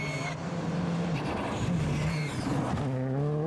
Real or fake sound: real